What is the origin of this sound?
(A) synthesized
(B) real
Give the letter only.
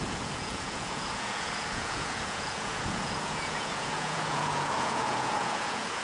A